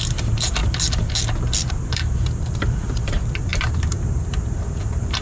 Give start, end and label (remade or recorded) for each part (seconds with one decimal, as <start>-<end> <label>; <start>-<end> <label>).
0.0-0.6 remade; 0.6-1.7 recorded; 1.7-5.2 remade